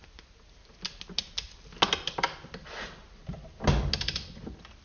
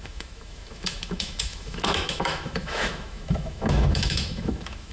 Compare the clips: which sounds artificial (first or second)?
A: second